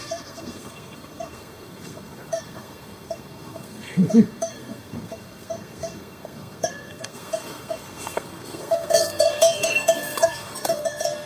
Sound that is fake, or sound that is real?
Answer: fake